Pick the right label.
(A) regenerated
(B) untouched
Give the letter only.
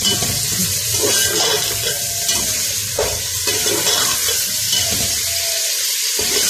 B